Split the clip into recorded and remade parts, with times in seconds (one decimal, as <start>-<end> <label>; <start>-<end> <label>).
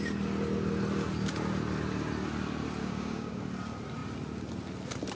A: 0.0-2.8 recorded; 2.8-3.4 remade; 3.4-5.2 recorded